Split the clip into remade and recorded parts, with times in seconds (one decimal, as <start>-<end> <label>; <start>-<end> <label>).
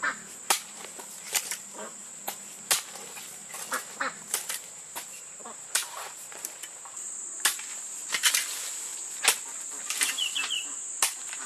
0.0-2.0 remade; 2.0-2.6 recorded; 2.6-3.4 remade; 3.4-4.2 recorded; 4.2-8.9 remade; 8.9-10.0 recorded; 10.0-11.5 remade